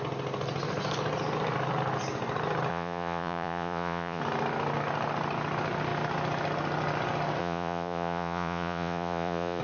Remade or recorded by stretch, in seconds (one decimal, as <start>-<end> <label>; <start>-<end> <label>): 0.0-2.7 recorded; 2.7-4.2 remade; 4.2-7.4 recorded; 7.4-9.6 remade